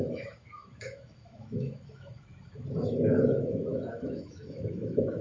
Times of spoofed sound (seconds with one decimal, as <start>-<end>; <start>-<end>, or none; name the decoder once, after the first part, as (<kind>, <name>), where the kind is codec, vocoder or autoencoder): 0.0-5.2 (autoencoder, DAC-VAE)